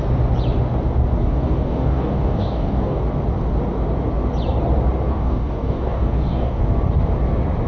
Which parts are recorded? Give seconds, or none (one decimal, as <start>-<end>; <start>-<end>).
0.0-1.2; 3.0-5.1; 6.6-7.7